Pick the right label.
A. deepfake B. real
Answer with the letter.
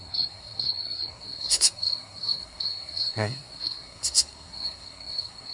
A